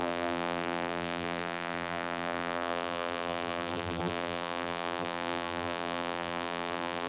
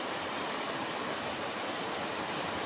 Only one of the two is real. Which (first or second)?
second